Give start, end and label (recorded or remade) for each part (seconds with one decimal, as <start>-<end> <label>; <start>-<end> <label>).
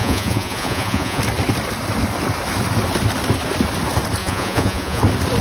0.0-1.2 remade; 1.2-4.2 recorded; 4.2-5.0 remade; 5.0-5.4 recorded